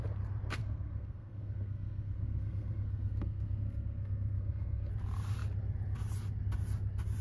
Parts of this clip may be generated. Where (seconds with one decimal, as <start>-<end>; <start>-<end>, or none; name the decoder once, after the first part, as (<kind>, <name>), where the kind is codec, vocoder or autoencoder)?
0.6-4.9 (codec, SNAC)